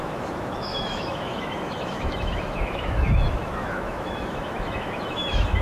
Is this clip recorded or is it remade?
remade